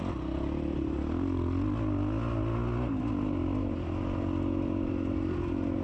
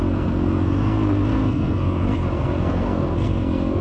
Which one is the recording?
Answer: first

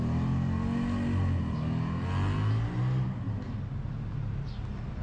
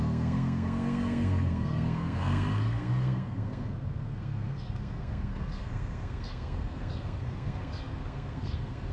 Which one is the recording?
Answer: first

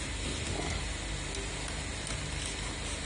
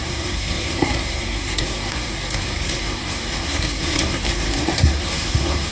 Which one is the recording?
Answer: first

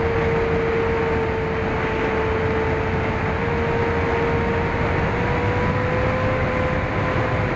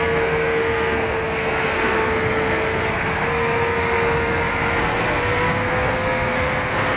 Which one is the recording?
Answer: first